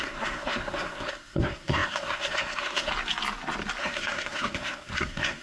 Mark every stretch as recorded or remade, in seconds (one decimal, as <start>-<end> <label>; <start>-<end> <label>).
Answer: 0.0-2.9 remade; 2.9-3.8 recorded; 3.8-5.4 remade